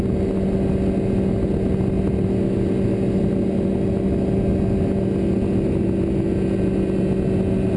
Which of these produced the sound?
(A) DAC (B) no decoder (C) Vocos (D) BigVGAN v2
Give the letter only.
B